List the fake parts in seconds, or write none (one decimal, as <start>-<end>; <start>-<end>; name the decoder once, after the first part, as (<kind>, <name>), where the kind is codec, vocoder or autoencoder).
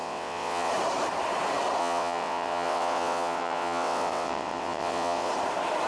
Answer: 0.0-0.7 (vocoder, WaveNeXt); 1.8-5.3